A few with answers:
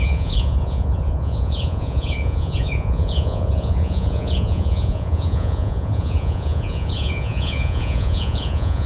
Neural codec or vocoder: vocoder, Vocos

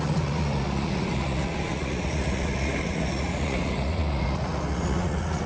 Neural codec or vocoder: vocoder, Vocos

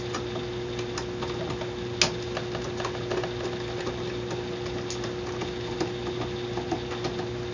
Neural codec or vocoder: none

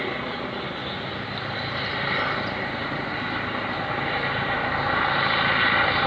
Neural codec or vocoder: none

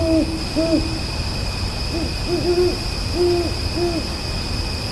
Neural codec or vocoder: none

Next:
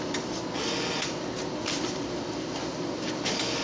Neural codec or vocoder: none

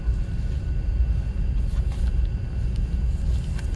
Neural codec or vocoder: none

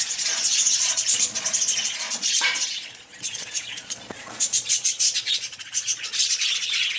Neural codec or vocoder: vocoder, Vocos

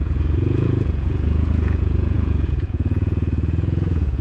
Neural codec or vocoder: vocoder, Vocos